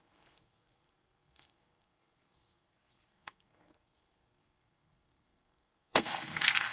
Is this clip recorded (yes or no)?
no